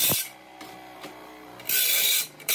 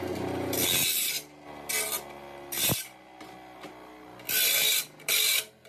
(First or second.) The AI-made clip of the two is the first